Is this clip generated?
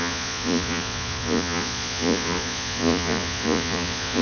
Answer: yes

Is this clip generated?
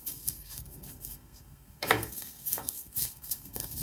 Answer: yes